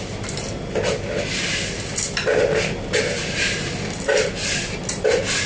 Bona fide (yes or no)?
yes